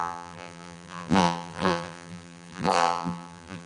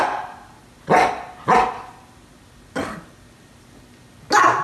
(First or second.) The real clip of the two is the second